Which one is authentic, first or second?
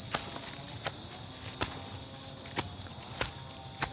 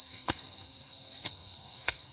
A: first